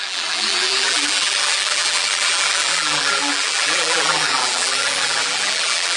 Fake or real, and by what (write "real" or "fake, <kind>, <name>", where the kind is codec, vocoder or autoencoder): fake, vocoder, BigVGAN v2